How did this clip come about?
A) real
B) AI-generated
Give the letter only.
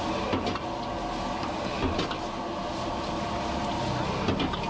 A